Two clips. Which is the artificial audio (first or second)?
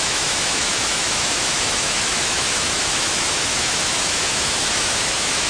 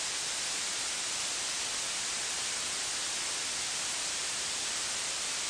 first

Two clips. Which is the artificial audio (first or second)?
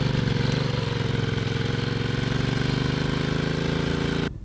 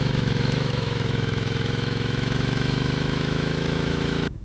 second